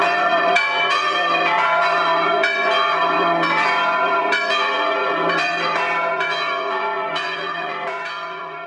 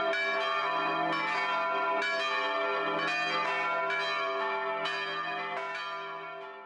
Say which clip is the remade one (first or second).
first